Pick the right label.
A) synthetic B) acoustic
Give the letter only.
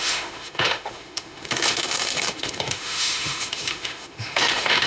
A